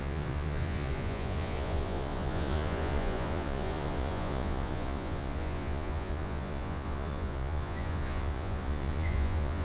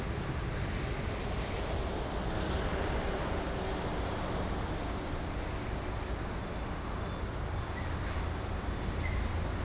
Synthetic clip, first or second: first